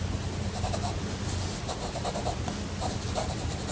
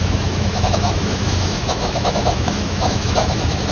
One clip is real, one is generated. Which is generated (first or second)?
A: second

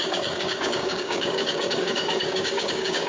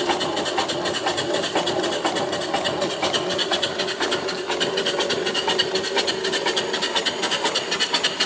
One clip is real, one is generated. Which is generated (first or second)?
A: first